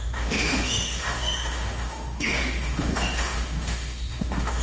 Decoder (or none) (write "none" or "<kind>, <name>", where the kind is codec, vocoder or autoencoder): autoencoder, DAC-VAE